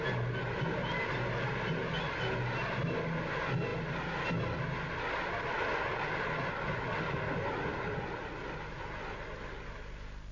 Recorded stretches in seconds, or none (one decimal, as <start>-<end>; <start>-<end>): 0.0-10.3